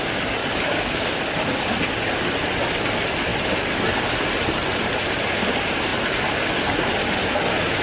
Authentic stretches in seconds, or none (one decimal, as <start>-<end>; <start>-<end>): 0.0-0.4; 1.2-7.8